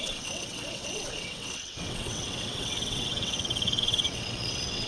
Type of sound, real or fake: fake